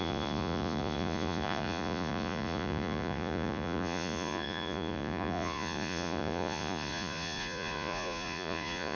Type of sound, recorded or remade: remade